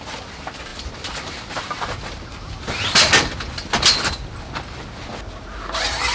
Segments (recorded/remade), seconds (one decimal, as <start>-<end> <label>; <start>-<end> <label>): 0.0-6.1 recorded